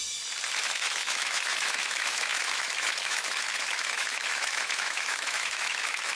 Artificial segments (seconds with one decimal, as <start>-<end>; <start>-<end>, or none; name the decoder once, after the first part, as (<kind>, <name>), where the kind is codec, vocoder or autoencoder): 0.6-6.1 (autoencoder, DAC-VAE)